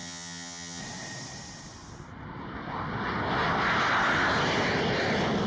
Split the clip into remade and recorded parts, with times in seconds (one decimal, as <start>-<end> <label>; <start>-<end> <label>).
0.0-0.8 remade; 0.8-5.5 recorded